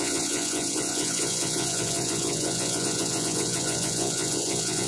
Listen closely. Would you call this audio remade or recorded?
remade